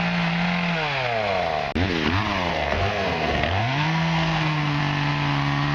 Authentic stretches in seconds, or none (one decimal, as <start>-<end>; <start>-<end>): 0.0-2.5; 4.8-5.7